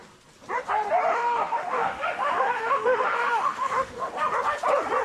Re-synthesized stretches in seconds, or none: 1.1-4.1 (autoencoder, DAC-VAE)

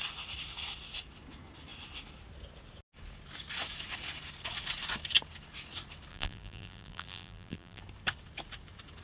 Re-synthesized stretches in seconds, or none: 6.1-7.8 (vocoder, BigVGAN v2)

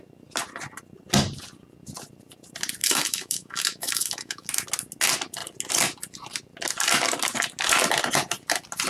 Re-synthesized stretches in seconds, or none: 2.8-4.5 (autoencoder, DAC-VAE)

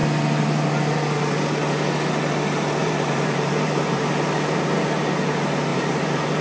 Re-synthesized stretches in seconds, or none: 2.8-4.0 (vocoder, BigVGAN v2); 5.7-6.4

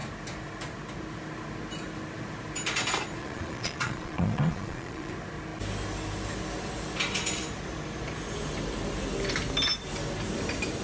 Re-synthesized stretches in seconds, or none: 3.2-5.1 (vocoder, Vocos)

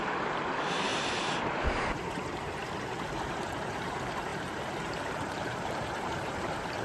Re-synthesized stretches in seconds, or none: 0.0-2.6 (vocoder, BigVGAN v2); 3.2-6.8

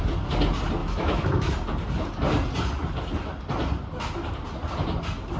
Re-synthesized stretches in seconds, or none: 0.8-1.5 (autoencoder, DAC-VAE)

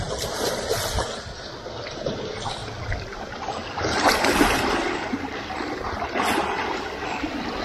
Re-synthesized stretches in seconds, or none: none